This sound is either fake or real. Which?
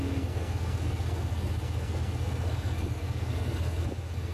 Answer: fake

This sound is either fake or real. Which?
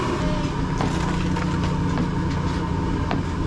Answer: real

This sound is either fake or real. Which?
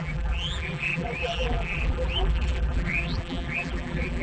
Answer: fake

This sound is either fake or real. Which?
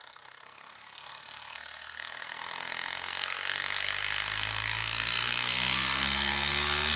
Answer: fake